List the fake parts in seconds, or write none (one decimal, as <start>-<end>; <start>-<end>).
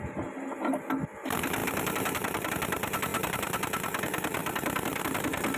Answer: none